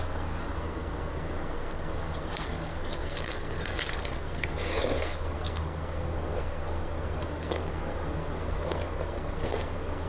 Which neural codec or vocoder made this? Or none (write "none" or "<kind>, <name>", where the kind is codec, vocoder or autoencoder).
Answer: codec, SNAC